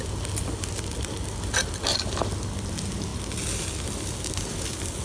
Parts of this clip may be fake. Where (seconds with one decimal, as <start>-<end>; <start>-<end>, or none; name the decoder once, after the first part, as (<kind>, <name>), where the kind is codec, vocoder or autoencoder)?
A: none